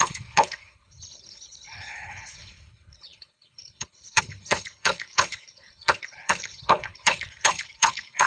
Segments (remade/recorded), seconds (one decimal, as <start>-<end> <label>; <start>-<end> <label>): 0.0-8.3 remade